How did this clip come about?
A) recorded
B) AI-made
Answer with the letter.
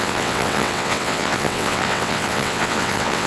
B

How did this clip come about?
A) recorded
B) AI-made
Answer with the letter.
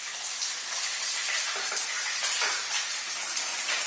B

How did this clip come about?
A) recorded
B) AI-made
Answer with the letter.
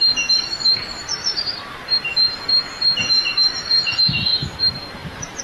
B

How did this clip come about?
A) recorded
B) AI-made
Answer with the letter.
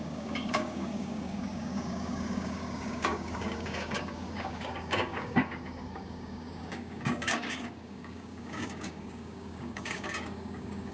B